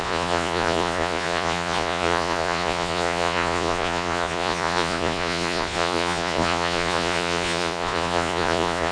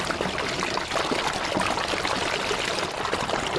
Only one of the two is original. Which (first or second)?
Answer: second